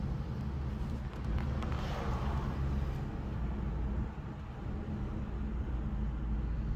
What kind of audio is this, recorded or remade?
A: recorded